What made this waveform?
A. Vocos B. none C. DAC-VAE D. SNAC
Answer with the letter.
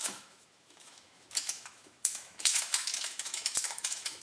C